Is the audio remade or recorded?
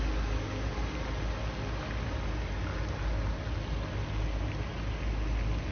recorded